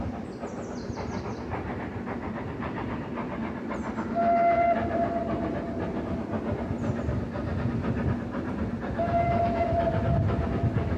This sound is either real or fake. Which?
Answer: real